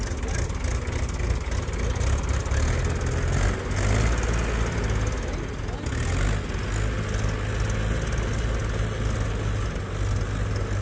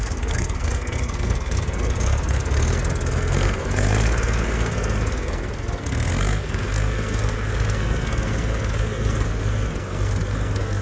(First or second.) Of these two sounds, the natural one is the first